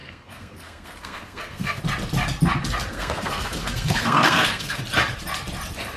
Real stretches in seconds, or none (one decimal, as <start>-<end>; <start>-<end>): 1.8-2.9; 4.8-6.0